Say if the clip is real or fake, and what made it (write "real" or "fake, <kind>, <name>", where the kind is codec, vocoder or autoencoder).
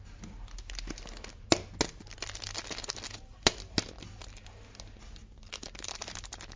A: real